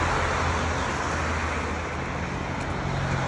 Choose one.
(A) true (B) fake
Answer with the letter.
A